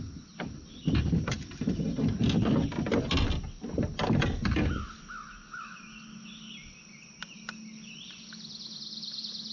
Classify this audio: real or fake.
real